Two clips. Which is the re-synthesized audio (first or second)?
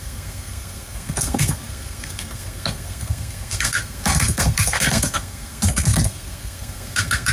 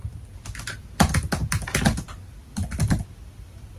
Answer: first